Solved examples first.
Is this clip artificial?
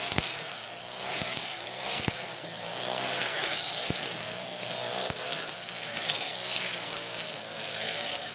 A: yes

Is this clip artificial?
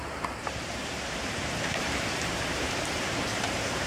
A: yes